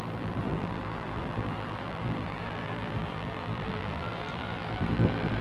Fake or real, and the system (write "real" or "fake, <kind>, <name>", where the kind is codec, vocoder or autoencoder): fake, vocoder, BigVGAN v2